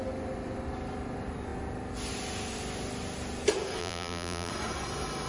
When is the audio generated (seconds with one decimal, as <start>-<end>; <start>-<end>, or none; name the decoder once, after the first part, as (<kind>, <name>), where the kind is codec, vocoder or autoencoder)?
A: 3.8-4.5 (vocoder, BigVGAN v2)